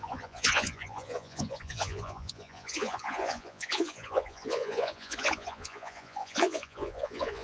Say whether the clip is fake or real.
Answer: fake